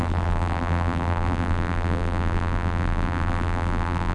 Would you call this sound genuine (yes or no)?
no